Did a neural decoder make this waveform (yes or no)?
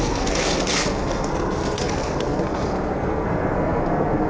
yes